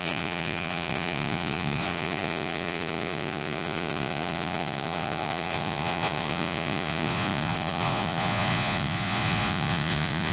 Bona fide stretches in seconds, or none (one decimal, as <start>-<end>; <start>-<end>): none